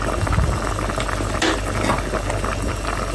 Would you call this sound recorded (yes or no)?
yes